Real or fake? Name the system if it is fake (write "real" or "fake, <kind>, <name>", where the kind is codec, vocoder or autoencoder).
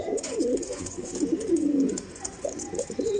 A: fake, vocoder, Vocos